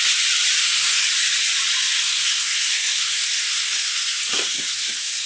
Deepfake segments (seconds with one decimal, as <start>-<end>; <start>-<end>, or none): 0.6-1.1; 2.0-5.3